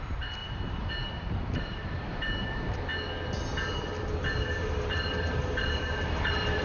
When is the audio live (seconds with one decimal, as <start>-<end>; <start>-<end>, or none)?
2.9-4.3

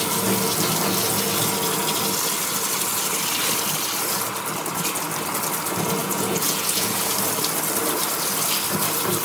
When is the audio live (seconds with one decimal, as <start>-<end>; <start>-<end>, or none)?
0.0-6.0; 7.1-9.2

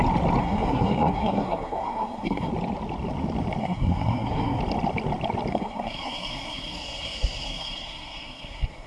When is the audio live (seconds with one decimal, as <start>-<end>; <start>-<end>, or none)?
0.0-0.4; 2.5-3.6; 4.6-5.5

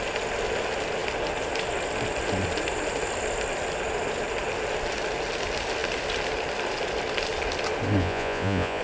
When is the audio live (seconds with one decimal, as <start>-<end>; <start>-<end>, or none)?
0.0-8.0

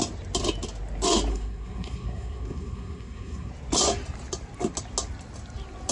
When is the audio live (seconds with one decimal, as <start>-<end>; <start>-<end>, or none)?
0.0-1.3; 3.5-5.9

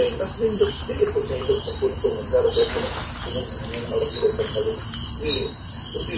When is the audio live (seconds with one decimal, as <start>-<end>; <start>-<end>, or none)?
3.9-5.2